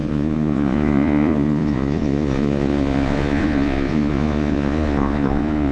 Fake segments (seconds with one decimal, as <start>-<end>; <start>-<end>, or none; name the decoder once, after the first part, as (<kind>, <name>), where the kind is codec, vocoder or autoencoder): 0.0-5.7 (vocoder, Vocos)